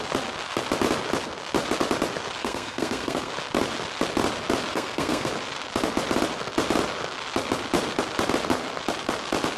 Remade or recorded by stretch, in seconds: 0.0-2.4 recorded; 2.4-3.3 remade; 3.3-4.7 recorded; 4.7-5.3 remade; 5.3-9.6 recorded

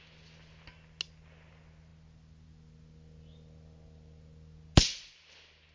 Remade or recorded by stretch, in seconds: 0.0-5.7 recorded

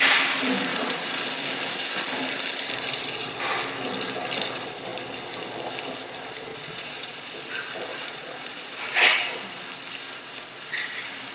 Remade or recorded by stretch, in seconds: 0.0-0.7 recorded; 0.7-1.2 remade; 1.2-6.5 recorded; 6.5-7.3 remade; 7.3-7.9 recorded; 7.9-8.7 remade; 8.7-11.3 recorded

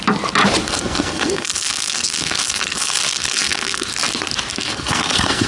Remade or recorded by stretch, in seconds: 0.0-0.6 recorded; 0.6-3.9 remade; 3.9-4.5 recorded; 4.5-5.5 remade

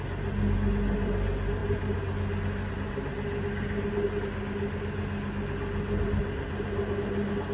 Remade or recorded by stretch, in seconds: 0.0-7.5 recorded

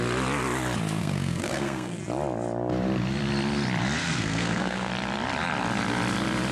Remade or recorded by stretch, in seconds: 0.0-1.0 recorded; 1.0-2.0 remade; 2.0-4.0 recorded; 4.0-4.9 remade; 4.9-6.5 recorded